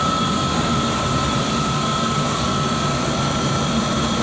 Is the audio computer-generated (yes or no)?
no